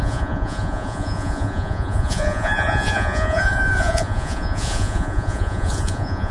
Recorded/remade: remade